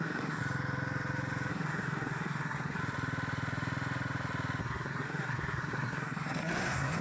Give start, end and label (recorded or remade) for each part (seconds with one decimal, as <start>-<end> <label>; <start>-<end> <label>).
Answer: 0.0-0.4 remade; 0.4-1.5 recorded; 1.5-2.8 remade; 2.8-4.6 recorded; 4.6-7.0 remade